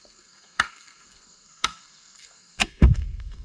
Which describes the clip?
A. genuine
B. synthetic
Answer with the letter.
B